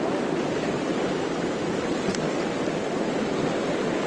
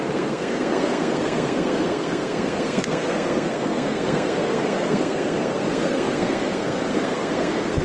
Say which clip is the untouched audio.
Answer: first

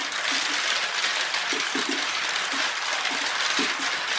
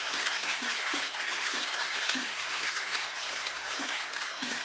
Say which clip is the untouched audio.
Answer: first